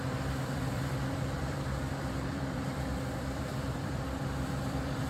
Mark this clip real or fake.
fake